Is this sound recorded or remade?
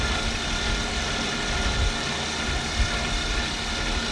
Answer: recorded